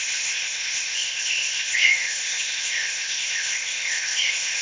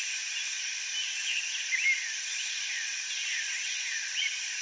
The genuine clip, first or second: second